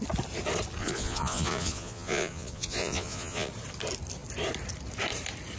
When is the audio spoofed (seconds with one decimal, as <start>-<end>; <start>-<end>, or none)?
0.8-3.5